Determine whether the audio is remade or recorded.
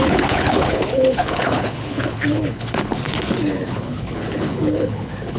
remade